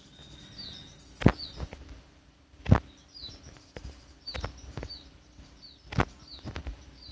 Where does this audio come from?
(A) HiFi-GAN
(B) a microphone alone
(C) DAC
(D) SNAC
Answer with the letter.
B